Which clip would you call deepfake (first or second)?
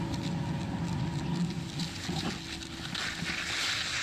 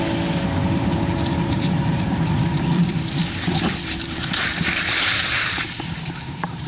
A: second